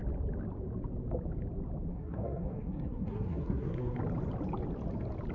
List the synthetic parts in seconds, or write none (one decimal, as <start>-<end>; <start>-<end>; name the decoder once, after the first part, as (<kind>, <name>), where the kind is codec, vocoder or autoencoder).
1.9-4.0 (codec, SNAC)